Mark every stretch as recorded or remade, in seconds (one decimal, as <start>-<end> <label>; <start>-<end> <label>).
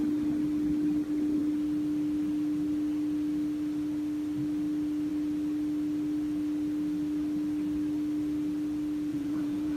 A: 0.0-9.1 recorded; 9.1-9.8 remade